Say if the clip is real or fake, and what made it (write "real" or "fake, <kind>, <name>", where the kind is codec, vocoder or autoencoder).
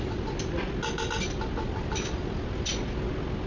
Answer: real